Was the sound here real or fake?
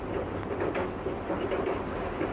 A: real